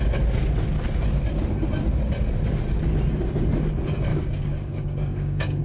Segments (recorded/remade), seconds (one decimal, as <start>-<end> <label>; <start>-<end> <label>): 0.0-4.1 recorded; 4.1-5.6 remade